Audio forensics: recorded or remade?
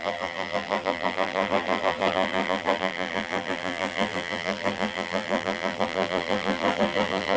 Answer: remade